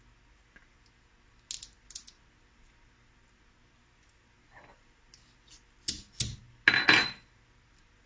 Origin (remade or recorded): recorded